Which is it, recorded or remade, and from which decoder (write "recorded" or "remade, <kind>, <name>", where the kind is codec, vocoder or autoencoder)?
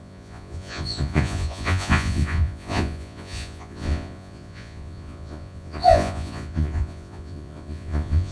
remade, vocoder, Vocos